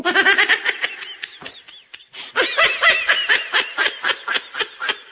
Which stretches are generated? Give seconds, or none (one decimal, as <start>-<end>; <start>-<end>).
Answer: none

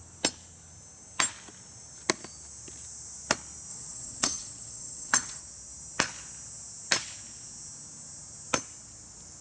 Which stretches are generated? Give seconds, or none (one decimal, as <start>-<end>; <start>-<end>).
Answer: 3.7-5.4

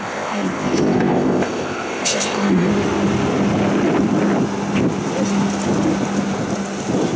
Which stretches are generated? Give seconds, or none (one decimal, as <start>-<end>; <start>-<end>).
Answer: 0.0-2.7

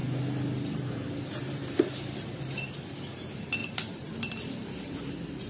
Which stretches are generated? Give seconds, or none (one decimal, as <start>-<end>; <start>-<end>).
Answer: 0.9-1.6; 3.0-5.5

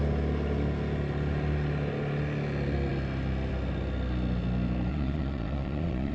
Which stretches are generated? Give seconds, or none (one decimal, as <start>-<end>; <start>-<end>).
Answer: 4.9-6.1

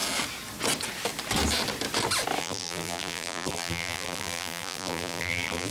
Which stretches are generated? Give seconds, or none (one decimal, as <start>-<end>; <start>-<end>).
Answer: 2.4-5.7